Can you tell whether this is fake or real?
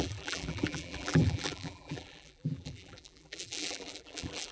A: fake